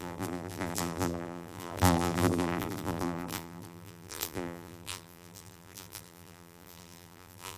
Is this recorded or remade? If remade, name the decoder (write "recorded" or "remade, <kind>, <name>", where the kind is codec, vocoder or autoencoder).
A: remade, vocoder, BigVGAN v2